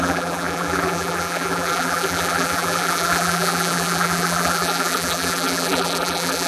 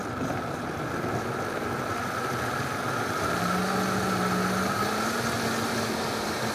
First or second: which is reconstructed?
first